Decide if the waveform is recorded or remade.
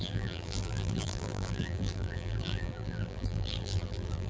remade